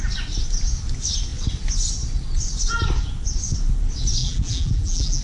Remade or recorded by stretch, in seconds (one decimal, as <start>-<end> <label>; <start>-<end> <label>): 0.0-4.2 recorded; 4.2-5.2 remade